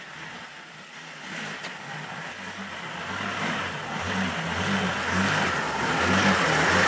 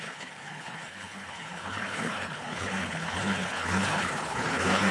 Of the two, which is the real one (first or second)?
first